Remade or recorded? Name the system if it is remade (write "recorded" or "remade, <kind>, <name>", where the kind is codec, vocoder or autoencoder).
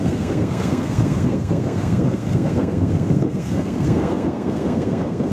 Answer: remade, codec, SNAC